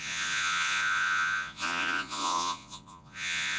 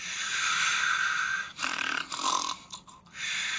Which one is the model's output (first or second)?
first